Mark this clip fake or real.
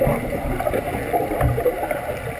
real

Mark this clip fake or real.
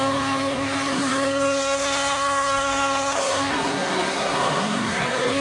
fake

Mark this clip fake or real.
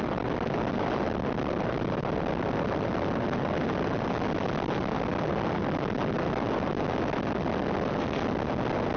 real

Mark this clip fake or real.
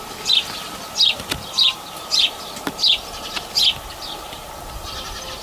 real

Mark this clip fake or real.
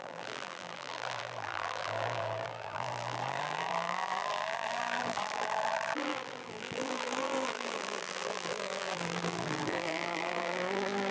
fake